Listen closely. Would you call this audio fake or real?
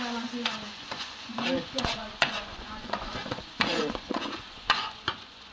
fake